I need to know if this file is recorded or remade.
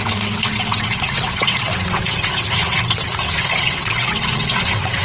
remade